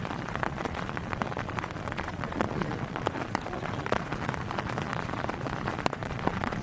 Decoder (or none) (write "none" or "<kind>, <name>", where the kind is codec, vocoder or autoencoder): vocoder, Vocos